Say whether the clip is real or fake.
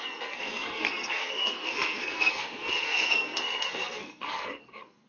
fake